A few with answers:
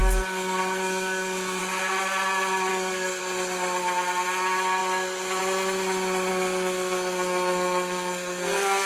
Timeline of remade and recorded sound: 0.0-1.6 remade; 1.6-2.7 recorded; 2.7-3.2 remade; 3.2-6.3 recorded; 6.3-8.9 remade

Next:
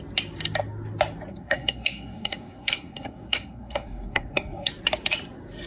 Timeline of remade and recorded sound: 0.0-1.3 recorded; 1.3-4.7 remade; 4.7-5.7 recorded

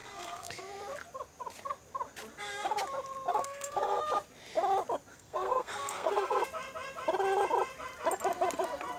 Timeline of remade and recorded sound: 0.0-0.6 remade; 0.6-3.3 recorded; 3.3-4.0 remade; 4.0-5.1 recorded; 5.1-6.4 remade; 6.4-9.0 recorded

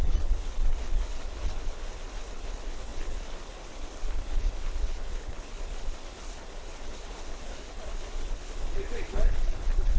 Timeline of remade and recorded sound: 0.0-10.0 remade

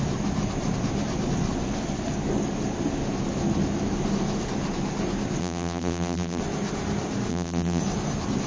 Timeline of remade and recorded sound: 0.0-5.4 recorded; 5.4-6.4 remade; 6.4-7.3 recorded; 7.3-7.8 remade; 7.8-8.5 recorded

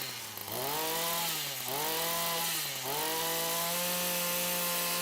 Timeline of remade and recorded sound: 0.0-5.0 recorded

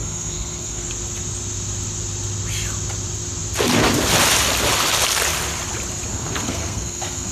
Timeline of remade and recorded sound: 0.0-0.9 remade; 0.9-6.1 recorded; 6.1-7.3 remade

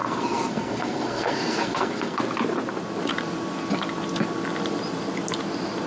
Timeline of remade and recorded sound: 0.0-2.2 remade; 2.2-5.9 recorded